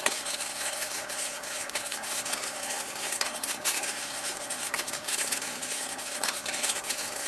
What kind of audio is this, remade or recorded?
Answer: remade